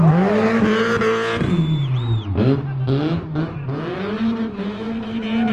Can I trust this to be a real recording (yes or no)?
yes